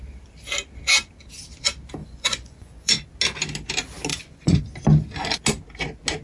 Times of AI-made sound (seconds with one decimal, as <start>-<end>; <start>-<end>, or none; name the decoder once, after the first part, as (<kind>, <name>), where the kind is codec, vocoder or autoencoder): 2.0-3.0 (vocoder, Vocos); 4.1-4.6